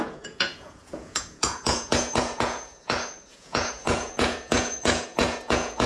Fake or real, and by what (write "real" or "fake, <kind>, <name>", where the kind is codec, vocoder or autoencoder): fake, vocoder, Vocos